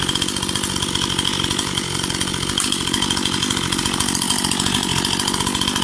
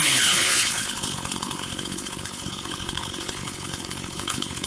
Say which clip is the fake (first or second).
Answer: second